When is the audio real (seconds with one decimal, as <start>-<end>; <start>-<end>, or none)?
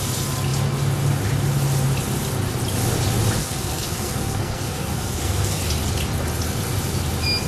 0.0-3.4; 5.6-7.5